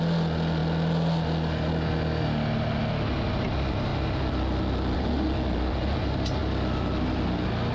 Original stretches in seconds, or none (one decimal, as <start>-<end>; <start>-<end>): 0.0-7.7